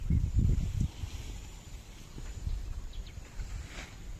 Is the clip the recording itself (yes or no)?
yes